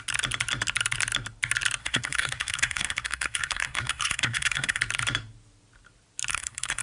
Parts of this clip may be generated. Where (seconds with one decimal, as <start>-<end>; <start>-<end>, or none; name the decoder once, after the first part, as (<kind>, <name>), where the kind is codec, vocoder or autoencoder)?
1.8-4.8 (codec, SNAC); 6.3-6.8